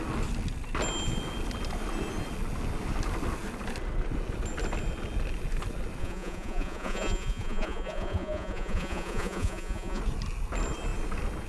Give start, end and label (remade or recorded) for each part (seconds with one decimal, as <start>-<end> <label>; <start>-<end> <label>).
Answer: 0.0-6.0 recorded; 6.0-10.0 remade; 10.0-11.5 recorded